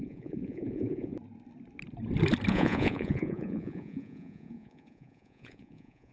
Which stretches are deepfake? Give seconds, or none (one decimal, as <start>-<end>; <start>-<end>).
0.0-1.1; 2.5-6.1